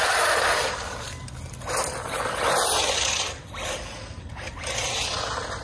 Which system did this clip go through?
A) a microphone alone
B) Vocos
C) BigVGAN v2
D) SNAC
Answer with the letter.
A